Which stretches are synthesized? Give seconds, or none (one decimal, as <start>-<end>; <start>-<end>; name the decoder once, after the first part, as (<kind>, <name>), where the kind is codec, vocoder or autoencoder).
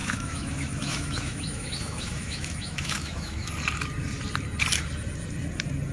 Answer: 0.0-3.5 (autoencoder, DAC-VAE)